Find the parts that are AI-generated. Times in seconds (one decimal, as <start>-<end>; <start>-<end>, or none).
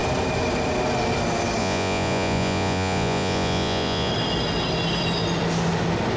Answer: 1.6-4.1